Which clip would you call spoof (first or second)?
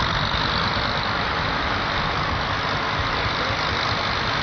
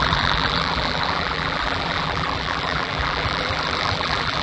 second